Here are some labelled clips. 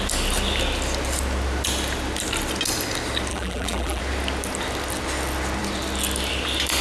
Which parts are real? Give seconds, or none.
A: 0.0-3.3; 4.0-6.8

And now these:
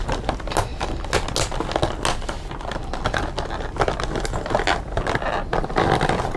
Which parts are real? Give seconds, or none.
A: 0.0-6.4

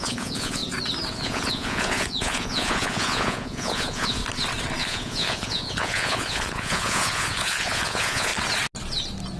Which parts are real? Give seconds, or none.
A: 0.6-1.1; 4.2-4.8; 8.3-9.4

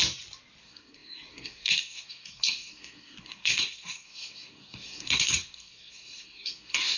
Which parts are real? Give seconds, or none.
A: 0.0-0.6

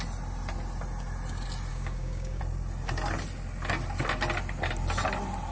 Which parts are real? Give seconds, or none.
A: 0.0-1.7; 2.4-5.5

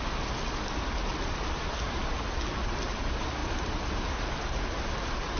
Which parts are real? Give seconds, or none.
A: 0.0-3.4; 4.3-5.4

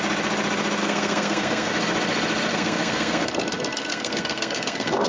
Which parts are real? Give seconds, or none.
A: 0.0-0.8; 1.7-2.5; 3.3-3.9

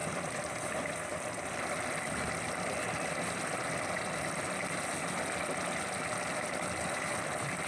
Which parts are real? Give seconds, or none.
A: 0.0-7.7